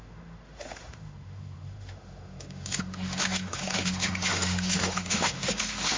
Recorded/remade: remade